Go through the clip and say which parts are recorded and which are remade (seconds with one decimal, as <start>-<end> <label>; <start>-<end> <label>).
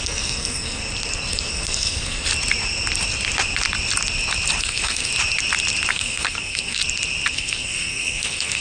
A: 0.0-0.8 remade; 0.8-1.3 recorded; 1.3-2.3 remade; 2.3-4.6 recorded; 4.6-5.1 remade; 5.1-5.9 recorded; 5.9-6.8 remade; 6.8-7.3 recorded; 7.3-8.6 remade